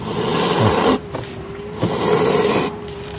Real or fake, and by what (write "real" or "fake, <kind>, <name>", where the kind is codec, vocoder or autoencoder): real